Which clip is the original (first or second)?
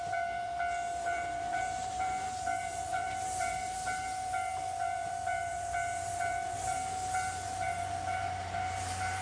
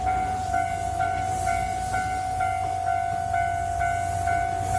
second